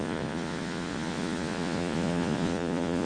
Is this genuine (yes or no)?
no